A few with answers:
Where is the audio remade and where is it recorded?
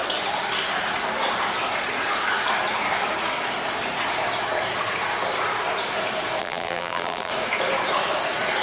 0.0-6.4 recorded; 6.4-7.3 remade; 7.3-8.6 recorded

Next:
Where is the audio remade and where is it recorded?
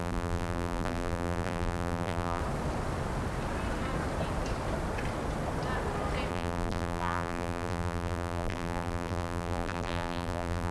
0.0-2.4 remade; 2.4-6.3 recorded; 6.3-10.7 remade